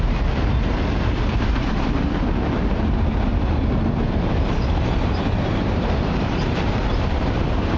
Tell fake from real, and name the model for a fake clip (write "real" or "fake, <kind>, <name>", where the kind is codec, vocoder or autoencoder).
fake, vocoder, BigVGAN v2